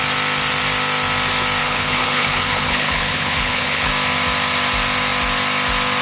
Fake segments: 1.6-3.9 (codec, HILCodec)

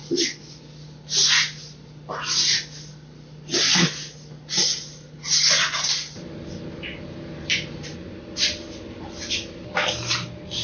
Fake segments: 0.0-0.5 (codec, HILCodec)